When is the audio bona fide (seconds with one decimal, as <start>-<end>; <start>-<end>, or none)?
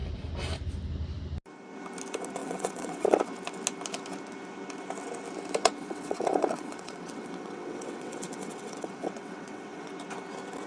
0.0-2.4; 3.2-5.6; 9.9-10.7